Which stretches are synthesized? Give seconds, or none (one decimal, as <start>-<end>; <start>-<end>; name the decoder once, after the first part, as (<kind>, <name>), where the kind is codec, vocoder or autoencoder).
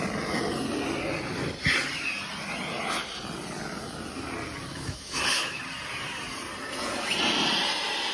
4.7-5.6 (autoencoder, DAC-VAE)